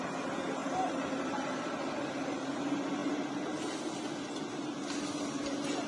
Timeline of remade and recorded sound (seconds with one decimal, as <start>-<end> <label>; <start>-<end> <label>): 0.0-0.6 recorded; 0.6-2.6 remade; 2.6-5.9 recorded